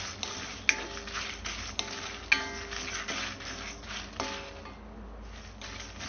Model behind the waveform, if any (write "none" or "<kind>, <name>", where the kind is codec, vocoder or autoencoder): none